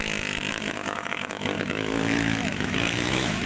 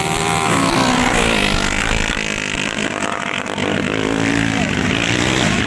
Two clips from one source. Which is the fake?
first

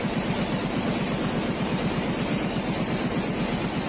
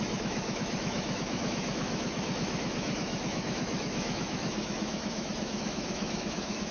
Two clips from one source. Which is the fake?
second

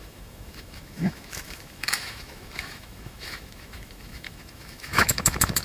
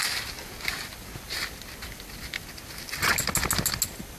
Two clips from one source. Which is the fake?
first